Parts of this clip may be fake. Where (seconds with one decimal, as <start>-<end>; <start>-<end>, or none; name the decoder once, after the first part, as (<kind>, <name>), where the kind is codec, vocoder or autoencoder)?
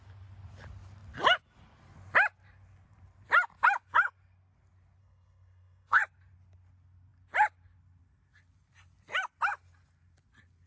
5.0-6.0 (codec, SNAC)